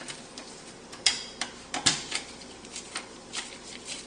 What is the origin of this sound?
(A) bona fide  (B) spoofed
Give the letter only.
B